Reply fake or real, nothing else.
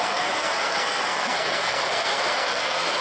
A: fake